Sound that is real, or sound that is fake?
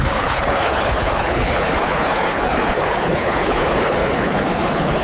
fake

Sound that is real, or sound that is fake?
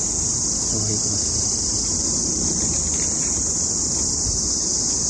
real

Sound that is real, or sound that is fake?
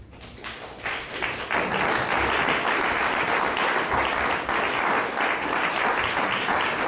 real